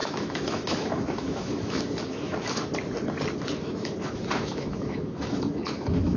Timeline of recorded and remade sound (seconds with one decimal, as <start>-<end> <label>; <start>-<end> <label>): 0.0-2.7 remade; 2.7-3.6 recorded; 3.6-6.2 remade